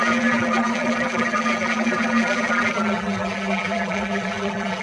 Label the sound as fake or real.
fake